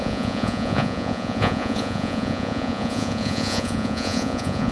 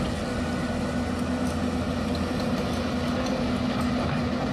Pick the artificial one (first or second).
first